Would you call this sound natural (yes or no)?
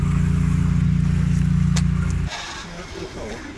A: yes